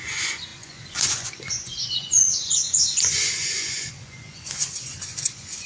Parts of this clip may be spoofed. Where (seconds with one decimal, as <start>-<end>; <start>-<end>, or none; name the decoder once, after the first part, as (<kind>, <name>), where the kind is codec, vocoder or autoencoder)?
0.0-5.7 (vocoder, Vocos)